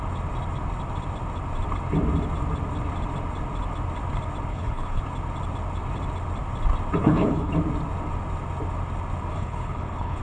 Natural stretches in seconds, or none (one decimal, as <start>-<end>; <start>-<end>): 0.0-4.5; 5.0-7.0; 7.5-9.3